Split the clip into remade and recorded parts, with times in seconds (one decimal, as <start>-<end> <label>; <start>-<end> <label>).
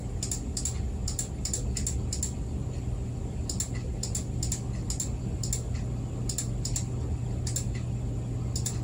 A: 0.0-8.8 recorded